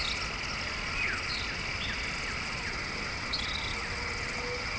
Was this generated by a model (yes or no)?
no